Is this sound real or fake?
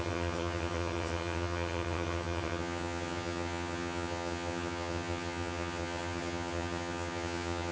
fake